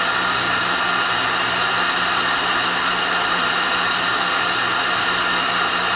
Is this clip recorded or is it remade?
recorded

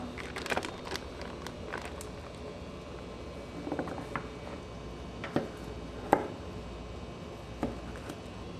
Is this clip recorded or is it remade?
recorded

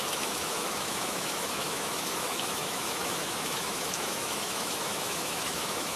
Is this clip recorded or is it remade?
remade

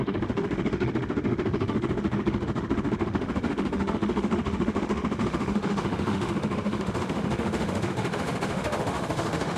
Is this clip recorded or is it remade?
remade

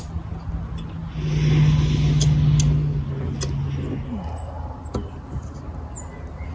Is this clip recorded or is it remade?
recorded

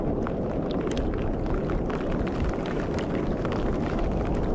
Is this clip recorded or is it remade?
recorded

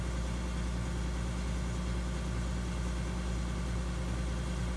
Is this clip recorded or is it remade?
recorded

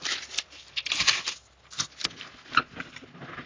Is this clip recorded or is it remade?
recorded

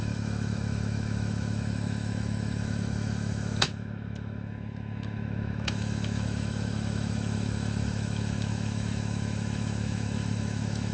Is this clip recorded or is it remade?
remade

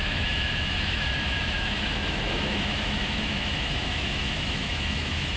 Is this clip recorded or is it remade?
remade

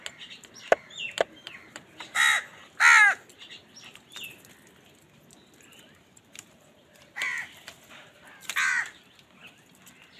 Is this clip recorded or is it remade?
recorded